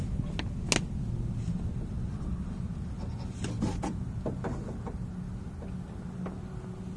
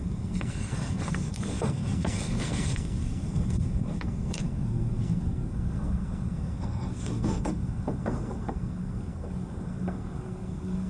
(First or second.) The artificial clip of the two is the second